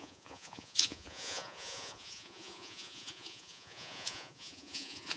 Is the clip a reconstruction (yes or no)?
yes